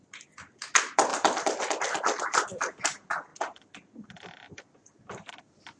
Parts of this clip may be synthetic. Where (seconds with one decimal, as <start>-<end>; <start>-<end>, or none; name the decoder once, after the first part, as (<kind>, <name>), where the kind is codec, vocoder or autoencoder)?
1.1-2.8 (vocoder, BigVGAN v2); 3.3-5.3